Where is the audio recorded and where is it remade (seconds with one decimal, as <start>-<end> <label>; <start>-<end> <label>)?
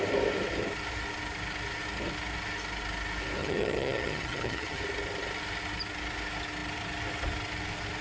0.0-3.4 recorded; 3.4-4.8 remade; 4.8-8.0 recorded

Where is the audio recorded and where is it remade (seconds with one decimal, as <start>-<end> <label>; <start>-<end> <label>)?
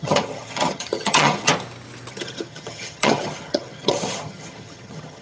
0.0-1.5 remade; 1.5-2.1 recorded; 2.1-5.2 remade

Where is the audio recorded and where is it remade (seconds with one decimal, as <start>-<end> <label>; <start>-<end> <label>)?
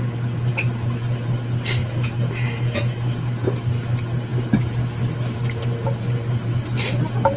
0.0-7.4 recorded